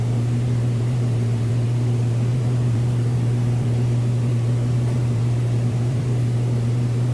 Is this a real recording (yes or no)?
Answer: no